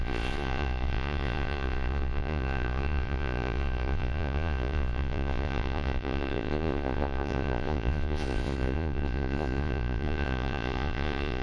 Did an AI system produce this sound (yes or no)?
yes